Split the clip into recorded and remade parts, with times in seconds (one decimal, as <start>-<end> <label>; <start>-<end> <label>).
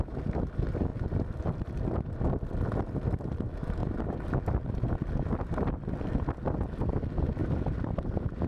0.0-7.4 recorded; 7.4-8.5 remade